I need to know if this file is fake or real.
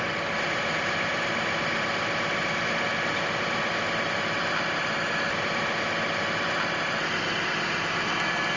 real